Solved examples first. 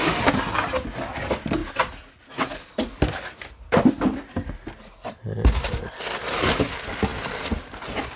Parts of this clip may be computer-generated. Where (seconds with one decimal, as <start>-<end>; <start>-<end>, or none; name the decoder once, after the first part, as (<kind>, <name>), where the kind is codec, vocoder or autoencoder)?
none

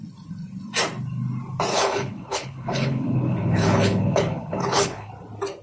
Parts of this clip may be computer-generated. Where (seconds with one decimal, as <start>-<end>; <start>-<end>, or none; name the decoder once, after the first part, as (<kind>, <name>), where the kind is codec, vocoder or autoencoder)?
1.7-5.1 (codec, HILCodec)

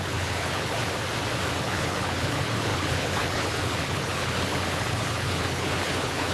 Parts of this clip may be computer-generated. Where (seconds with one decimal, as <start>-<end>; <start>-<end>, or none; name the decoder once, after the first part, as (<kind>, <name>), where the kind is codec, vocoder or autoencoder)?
0.0-0.8 (codec, HILCodec); 1.6-6.3